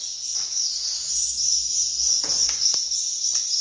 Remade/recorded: recorded